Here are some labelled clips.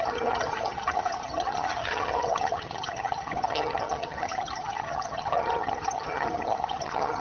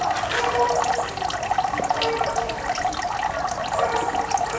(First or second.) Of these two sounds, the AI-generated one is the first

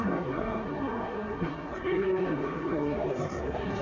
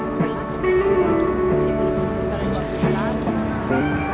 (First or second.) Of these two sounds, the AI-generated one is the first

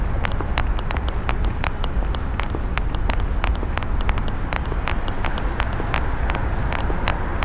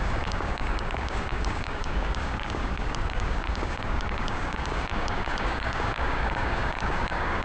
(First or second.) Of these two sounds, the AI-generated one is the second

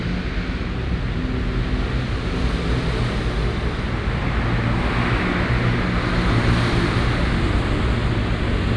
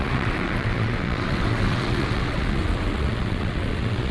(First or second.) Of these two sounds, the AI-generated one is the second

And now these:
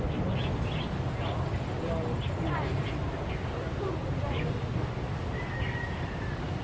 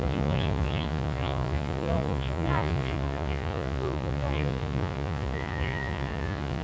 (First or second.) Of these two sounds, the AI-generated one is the second